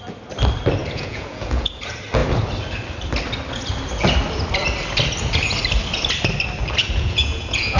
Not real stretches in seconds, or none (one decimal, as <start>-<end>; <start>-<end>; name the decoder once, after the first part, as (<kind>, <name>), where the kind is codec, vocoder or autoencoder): 0.8-1.8 (vocoder, Vocos); 6.8-7.8